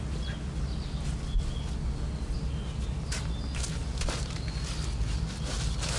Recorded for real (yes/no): yes